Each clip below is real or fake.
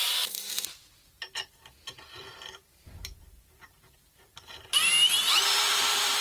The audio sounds fake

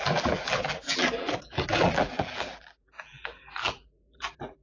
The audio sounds fake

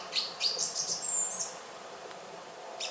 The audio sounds fake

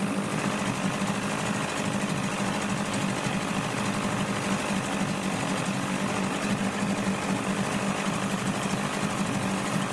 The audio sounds real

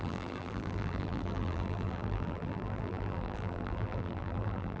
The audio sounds fake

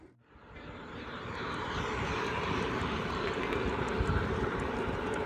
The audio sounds fake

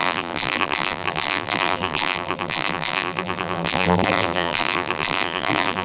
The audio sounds fake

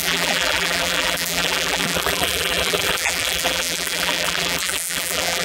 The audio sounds fake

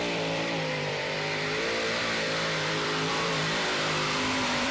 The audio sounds fake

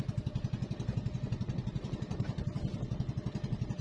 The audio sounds real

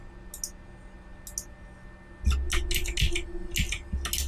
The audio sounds real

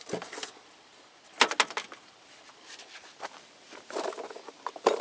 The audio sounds real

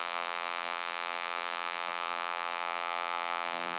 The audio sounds fake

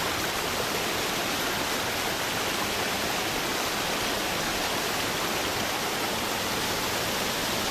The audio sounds real